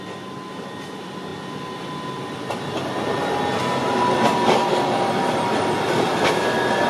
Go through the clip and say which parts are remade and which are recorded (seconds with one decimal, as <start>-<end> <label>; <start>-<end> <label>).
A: 0.0-6.9 recorded